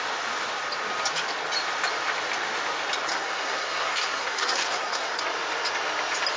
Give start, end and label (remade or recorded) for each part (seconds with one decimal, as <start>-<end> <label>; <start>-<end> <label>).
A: 0.0-3.1 recorded; 3.1-5.2 remade; 5.2-6.4 recorded